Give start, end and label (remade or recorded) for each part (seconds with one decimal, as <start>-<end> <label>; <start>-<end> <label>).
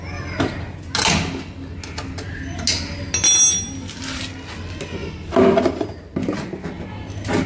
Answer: 0.0-7.5 recorded